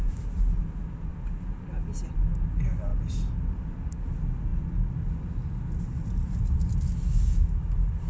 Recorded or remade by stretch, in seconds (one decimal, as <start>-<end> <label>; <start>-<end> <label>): 0.0-8.1 recorded